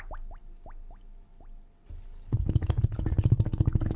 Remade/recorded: recorded